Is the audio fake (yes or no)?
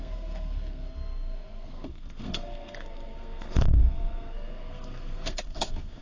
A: yes